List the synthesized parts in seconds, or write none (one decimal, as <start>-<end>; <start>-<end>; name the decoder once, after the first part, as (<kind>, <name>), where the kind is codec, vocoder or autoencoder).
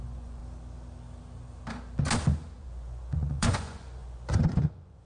0.0-0.4 (vocoder, Vocos); 2.6-5.1